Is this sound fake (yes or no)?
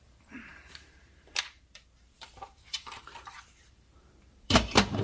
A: yes